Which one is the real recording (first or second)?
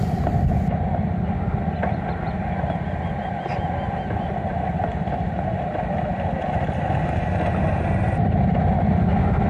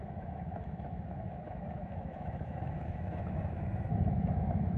first